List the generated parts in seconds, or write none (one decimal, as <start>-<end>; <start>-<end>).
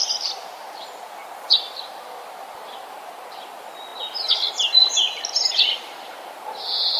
none